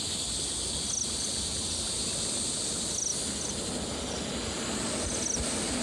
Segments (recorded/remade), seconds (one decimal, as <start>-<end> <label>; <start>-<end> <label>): 0.0-5.8 recorded